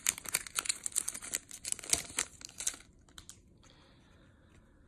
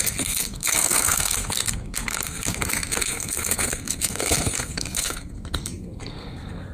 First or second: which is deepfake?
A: second